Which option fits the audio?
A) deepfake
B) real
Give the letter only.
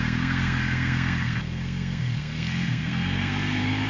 A